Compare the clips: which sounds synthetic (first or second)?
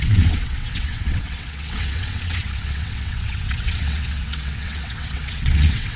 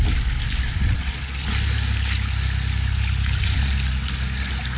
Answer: first